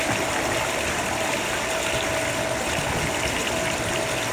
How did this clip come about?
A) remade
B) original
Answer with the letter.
B